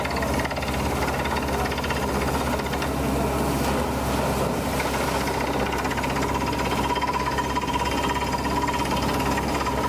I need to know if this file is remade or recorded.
recorded